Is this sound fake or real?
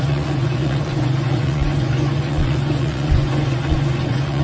fake